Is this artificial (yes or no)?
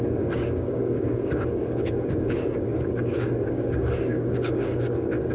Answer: yes